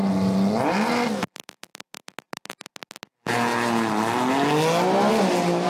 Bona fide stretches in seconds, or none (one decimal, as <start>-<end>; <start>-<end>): 0.0-5.7